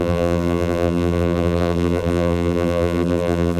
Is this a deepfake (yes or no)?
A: yes